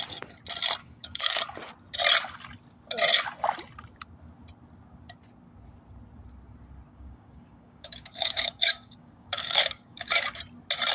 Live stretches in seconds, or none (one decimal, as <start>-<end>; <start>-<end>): 0.0-0.8; 1.4-6.9; 10.2-10.9